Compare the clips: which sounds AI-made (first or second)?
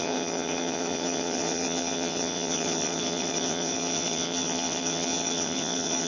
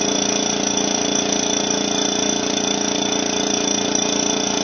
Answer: first